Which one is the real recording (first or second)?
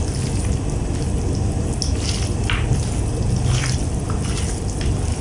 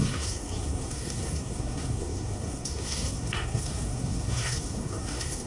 first